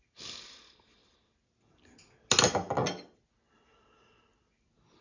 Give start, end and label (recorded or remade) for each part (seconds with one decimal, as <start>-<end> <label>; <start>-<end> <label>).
0.0-5.0 recorded